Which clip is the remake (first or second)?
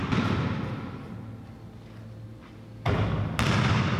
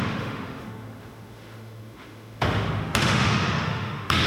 second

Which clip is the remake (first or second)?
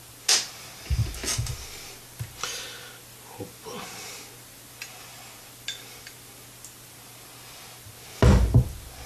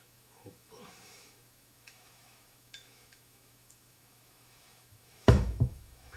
second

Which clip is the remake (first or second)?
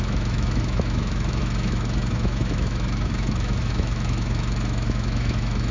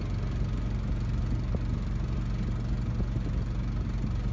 first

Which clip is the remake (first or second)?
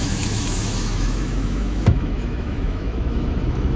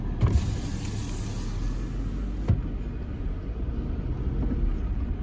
first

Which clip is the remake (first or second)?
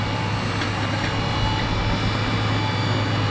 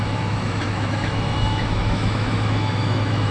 second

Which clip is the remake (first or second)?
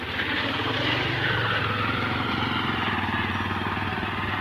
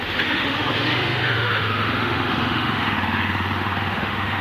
second